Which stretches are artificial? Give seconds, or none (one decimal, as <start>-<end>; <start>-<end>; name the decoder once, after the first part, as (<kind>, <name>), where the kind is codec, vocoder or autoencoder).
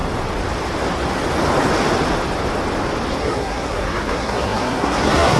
3.2-5.4 (codec, SNAC)